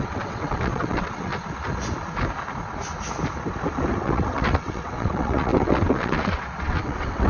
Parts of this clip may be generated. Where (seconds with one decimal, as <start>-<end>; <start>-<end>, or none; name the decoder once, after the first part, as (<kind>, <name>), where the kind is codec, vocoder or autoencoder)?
0.0-1.3 (vocoder, WaveNeXt); 4.0-7.3